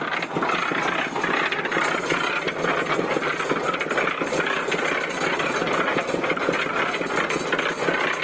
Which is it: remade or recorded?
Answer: recorded